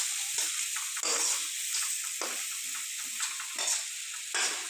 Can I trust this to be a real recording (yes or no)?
yes